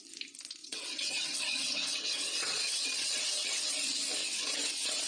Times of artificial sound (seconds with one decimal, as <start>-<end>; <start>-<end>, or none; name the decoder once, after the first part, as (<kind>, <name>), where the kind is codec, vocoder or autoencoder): 0.6-3.7 (vocoder, WaveNeXt); 4.2-5.1